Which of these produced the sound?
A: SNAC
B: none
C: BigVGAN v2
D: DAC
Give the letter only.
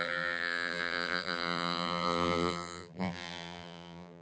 C